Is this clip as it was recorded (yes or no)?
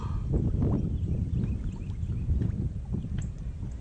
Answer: yes